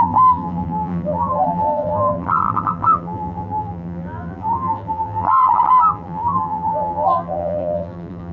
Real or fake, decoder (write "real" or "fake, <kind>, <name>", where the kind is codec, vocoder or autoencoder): fake, vocoder, BigVGAN v2